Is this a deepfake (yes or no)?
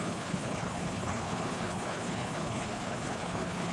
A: yes